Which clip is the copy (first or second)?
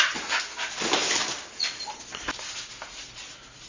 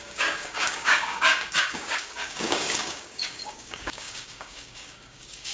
second